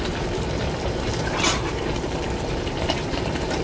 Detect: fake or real fake